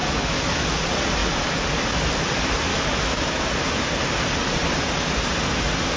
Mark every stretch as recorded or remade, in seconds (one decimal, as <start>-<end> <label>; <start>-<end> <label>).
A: 0.0-0.7 remade; 0.7-2.7 recorded; 2.7-3.5 remade; 3.5-6.0 recorded